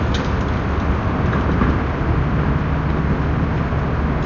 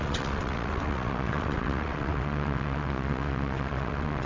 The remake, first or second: second